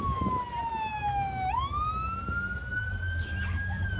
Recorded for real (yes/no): yes